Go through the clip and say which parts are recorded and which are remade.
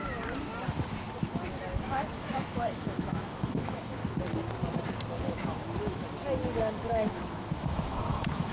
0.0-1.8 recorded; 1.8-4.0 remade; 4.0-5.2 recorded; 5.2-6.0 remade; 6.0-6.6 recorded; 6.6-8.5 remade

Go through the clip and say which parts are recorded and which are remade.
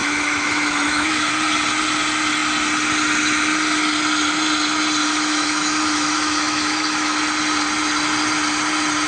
0.0-1.3 remade; 1.3-5.0 recorded; 5.0-7.2 remade; 7.2-9.1 recorded